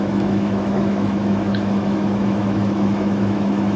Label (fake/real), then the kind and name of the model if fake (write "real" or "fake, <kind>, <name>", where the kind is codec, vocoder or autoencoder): fake, autoencoder, DAC-VAE